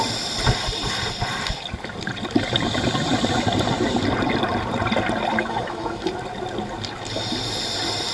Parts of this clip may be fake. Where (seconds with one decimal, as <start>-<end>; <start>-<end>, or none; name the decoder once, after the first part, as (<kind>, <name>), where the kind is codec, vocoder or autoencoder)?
5.3-6.1 (autoencoder, DAC-VAE)